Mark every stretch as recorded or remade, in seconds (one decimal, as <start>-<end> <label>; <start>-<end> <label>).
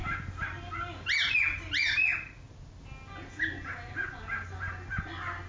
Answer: 0.0-5.5 recorded